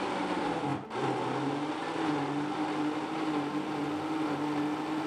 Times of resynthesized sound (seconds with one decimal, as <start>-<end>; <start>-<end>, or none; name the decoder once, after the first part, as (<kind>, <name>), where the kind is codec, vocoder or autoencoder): none